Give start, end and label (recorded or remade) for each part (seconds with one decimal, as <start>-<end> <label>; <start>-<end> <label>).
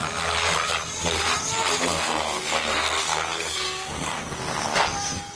0.0-1.8 recorded; 1.8-5.4 remade